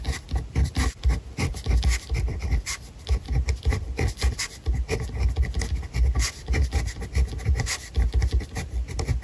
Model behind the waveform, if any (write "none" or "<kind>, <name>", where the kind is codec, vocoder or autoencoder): none